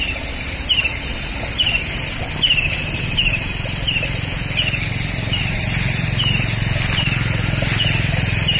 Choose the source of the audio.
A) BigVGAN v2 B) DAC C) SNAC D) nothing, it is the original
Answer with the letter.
D